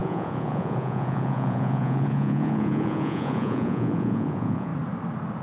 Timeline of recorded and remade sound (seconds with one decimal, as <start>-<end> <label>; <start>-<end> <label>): 0.0-4.7 remade; 4.7-5.4 recorded